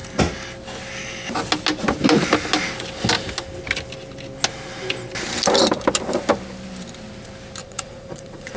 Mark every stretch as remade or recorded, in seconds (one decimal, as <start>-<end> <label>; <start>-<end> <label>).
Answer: 0.0-7.6 recorded; 7.6-8.6 remade